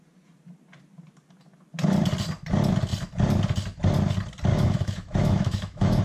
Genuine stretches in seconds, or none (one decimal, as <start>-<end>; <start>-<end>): 0.0-4.5